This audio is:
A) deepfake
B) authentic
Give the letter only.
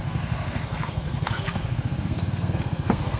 A